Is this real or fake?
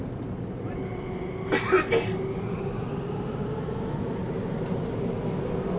real